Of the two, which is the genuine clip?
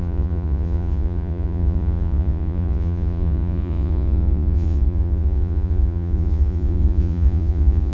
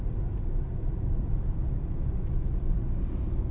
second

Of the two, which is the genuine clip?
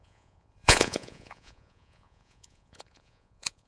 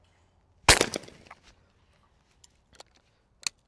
second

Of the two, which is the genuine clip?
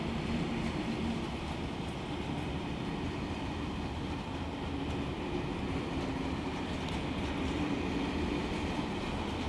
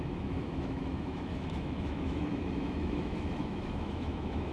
first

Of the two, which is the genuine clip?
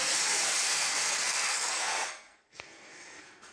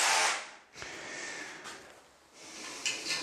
second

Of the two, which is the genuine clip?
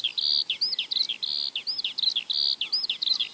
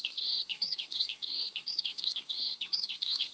first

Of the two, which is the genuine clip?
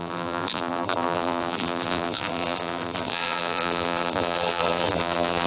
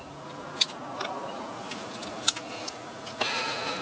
second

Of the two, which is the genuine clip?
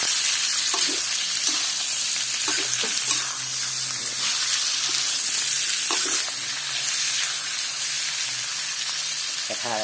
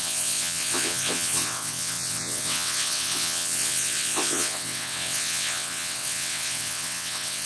first